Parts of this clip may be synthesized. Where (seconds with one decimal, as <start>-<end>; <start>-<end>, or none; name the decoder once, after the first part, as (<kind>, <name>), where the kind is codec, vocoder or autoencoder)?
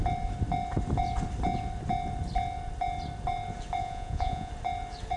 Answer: 3.8-4.5 (vocoder, Vocos)